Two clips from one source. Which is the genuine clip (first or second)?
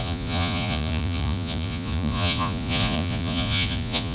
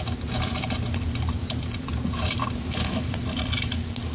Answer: second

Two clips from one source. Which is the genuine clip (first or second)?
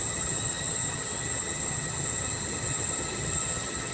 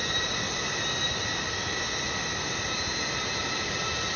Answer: second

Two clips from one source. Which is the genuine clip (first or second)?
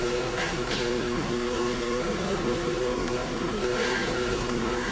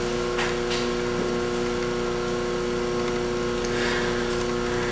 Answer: second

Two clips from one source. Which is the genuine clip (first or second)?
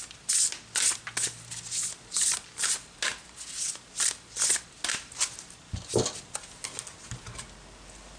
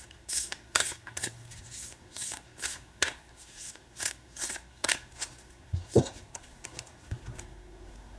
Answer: first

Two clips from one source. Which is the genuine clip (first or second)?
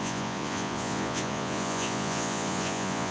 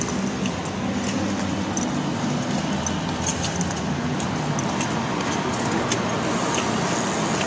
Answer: second